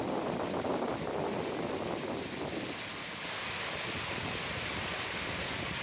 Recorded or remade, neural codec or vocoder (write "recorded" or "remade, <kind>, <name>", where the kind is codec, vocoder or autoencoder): recorded